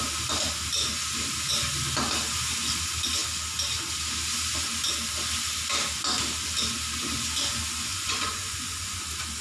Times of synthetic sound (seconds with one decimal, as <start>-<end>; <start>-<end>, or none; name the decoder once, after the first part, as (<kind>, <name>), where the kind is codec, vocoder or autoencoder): 7.9-9.0 (vocoder, Vocos)